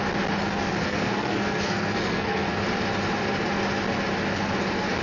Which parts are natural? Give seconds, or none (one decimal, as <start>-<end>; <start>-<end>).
0.0-0.8; 2.6-5.0